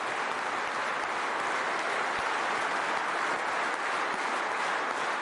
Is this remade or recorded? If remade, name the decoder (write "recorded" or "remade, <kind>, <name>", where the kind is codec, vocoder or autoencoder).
recorded